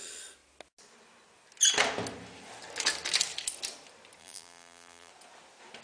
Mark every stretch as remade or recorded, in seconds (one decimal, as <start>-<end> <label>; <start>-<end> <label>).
0.0-4.2 recorded; 4.2-5.1 remade; 5.1-5.8 recorded